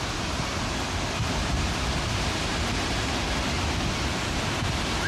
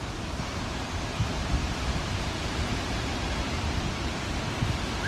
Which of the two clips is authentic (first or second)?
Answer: first